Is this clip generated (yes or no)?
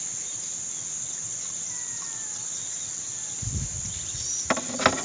no